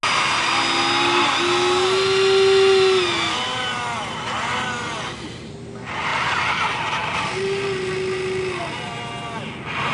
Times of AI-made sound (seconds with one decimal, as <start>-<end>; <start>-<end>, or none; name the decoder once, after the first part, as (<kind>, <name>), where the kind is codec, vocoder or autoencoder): none